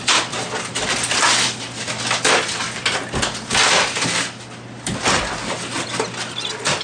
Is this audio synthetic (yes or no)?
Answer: no